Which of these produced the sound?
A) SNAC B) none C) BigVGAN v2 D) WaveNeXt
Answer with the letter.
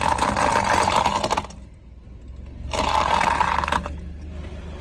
B